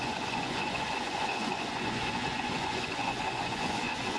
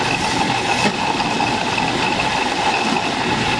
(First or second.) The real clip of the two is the second